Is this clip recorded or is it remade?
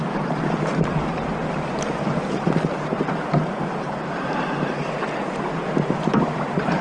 remade